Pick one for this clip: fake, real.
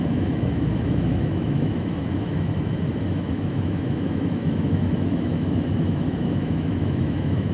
fake